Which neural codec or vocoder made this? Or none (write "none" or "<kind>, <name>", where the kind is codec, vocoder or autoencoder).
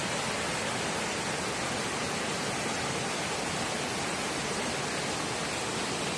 none